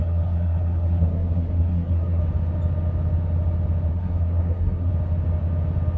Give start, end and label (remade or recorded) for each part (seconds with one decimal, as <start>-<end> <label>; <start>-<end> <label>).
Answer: 0.0-2.2 remade; 2.2-3.9 recorded; 3.9-4.9 remade; 4.9-6.0 recorded